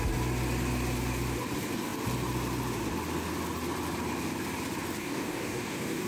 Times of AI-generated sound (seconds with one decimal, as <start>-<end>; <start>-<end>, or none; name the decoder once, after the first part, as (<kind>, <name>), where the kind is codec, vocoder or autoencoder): 5.0-6.1 (codec, DAC)